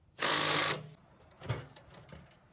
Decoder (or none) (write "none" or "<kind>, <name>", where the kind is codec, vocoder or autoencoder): none